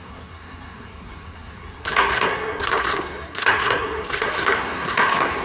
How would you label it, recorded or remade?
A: remade